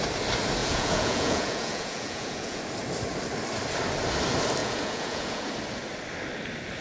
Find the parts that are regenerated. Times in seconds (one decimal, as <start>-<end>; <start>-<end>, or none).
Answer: 0.6-2.6; 4.6-5.5